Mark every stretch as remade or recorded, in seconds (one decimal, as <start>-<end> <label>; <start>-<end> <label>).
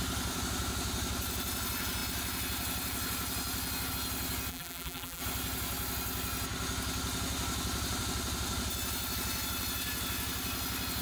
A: 0.0-4.5 recorded; 4.5-5.2 remade; 5.2-11.0 recorded